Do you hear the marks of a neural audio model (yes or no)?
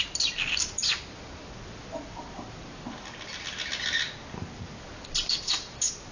no